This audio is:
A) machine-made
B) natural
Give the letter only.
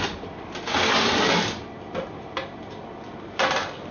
B